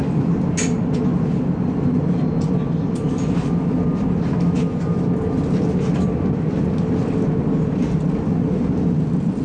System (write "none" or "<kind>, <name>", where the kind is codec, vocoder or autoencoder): none